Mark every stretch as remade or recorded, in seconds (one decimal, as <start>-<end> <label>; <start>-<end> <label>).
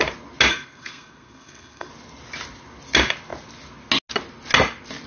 0.0-0.5 recorded; 0.5-1.9 remade; 1.9-5.1 recorded